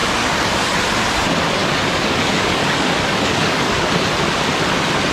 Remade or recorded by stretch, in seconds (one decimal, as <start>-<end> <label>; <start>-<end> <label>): 0.0-0.8 remade; 0.8-1.6 recorded; 1.6-3.9 remade; 3.9-5.1 recorded